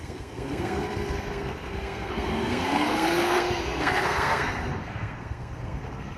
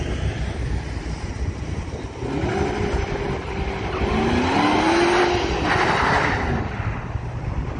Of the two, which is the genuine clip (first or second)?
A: second